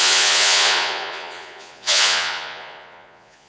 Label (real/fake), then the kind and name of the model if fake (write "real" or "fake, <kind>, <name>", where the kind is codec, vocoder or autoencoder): fake, vocoder, Vocos